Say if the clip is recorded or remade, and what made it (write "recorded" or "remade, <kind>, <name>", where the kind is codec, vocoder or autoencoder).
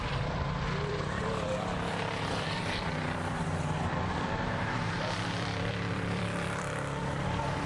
remade, vocoder, BigVGAN v2